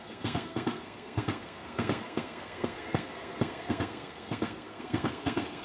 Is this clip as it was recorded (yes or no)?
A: no